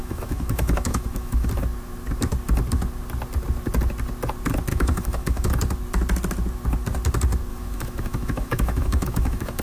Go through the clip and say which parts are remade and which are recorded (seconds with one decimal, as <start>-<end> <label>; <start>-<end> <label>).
0.0-1.5 remade; 1.5-4.7 recorded; 4.7-5.5 remade; 5.5-7.5 recorded; 7.5-9.6 remade